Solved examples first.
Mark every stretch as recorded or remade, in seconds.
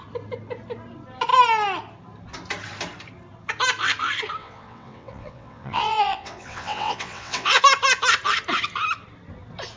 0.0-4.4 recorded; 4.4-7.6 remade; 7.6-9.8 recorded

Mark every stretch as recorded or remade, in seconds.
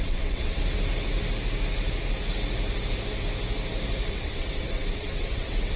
0.0-0.6 remade; 0.6-4.1 recorded; 4.1-5.8 remade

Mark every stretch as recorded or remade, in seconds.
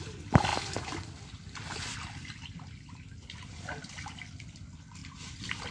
0.0-5.7 recorded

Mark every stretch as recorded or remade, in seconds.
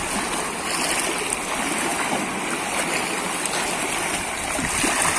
0.0-5.2 recorded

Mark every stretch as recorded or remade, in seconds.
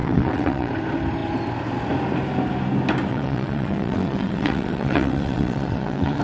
0.0-0.7 remade; 0.7-3.1 recorded; 3.1-6.2 remade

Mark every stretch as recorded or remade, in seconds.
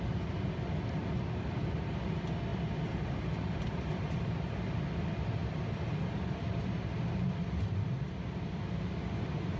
0.0-9.6 recorded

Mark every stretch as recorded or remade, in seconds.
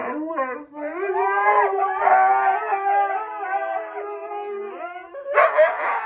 0.0-6.1 recorded